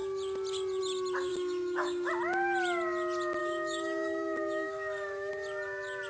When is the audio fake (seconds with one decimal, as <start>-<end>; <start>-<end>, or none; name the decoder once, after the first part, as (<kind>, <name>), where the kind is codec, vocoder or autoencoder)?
1.3-2.1 (autoencoder, DAC-VAE); 3.4-5.3